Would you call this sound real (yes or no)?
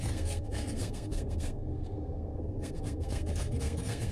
no